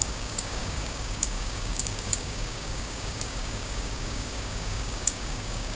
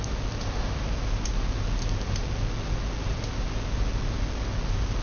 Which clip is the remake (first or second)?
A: first